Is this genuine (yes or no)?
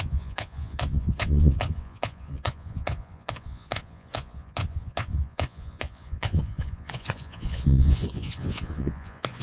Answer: no